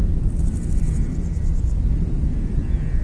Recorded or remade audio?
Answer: remade